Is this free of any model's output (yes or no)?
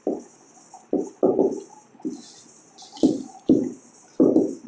yes